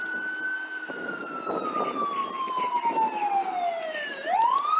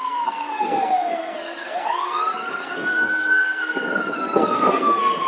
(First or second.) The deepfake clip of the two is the second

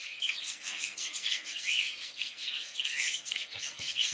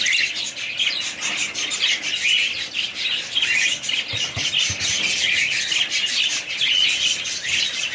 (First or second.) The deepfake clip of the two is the first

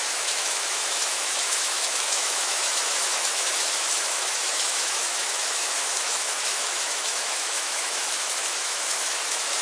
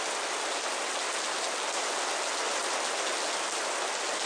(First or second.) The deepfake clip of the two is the first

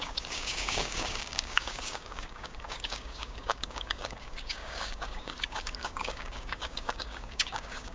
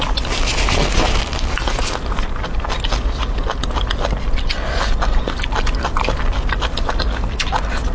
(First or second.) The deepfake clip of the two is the first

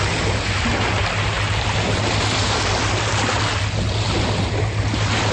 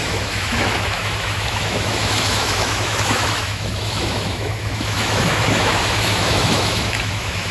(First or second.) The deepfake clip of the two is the second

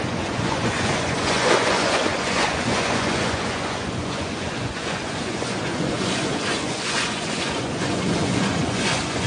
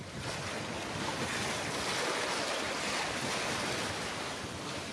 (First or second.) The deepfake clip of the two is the first